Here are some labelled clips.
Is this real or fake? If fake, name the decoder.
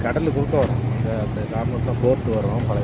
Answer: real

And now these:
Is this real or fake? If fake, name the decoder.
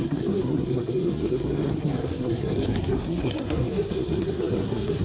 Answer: fake, codec, SNAC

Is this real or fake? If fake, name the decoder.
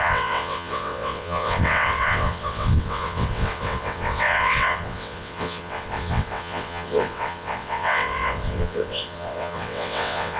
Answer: fake, vocoder, WaveNeXt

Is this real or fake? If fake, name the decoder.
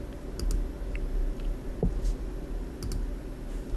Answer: real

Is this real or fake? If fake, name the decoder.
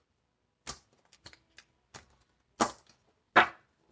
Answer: real